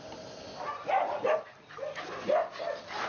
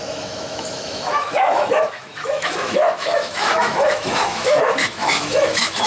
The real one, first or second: first